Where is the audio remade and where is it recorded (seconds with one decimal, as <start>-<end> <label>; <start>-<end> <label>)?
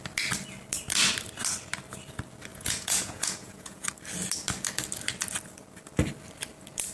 0.0-2.5 recorded; 2.5-3.9 remade; 3.9-6.9 recorded